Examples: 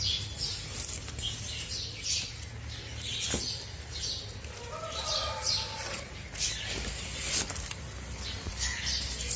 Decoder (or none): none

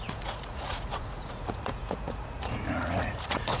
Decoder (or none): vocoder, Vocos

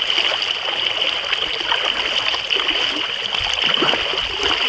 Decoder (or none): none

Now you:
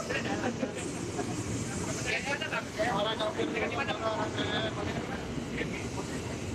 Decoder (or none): none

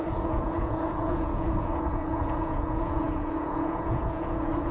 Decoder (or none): vocoder, Vocos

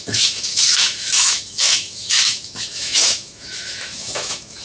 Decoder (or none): autoencoder, DAC-VAE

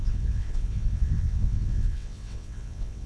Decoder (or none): vocoder, WaveNeXt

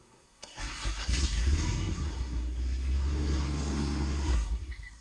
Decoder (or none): codec, SNAC